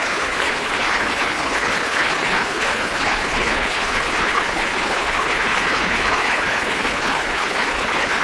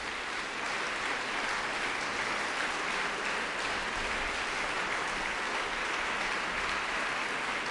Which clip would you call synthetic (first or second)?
first